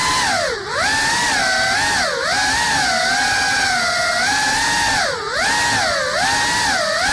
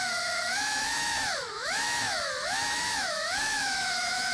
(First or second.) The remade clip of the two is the second